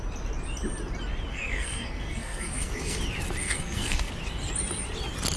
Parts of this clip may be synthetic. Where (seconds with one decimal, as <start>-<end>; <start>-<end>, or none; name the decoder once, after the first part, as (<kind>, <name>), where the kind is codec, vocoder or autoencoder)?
1.3-3.0 (codec, SNAC); 3.4-4.1